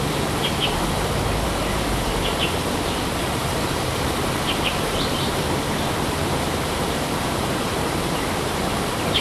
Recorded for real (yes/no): no